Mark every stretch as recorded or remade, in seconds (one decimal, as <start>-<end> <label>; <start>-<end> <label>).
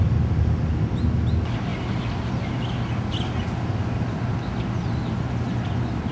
0.0-6.1 recorded